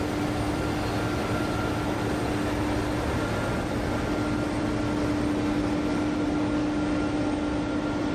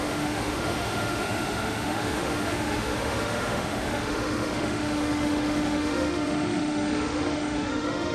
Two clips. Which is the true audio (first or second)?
first